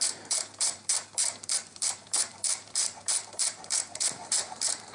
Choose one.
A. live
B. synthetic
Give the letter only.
B